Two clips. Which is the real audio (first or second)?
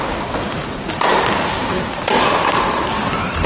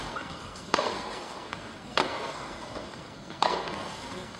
first